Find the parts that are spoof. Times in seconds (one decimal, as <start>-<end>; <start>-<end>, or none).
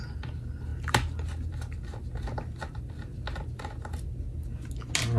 none